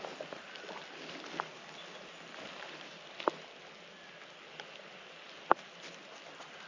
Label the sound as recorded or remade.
recorded